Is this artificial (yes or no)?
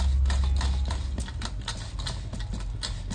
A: no